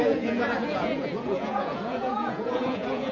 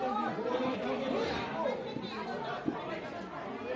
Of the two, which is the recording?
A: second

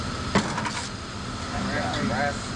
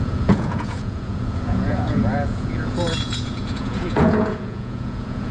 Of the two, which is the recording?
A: first